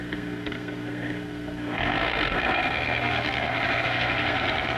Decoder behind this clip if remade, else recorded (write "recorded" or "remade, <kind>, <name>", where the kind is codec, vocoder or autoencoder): remade, codec, SNAC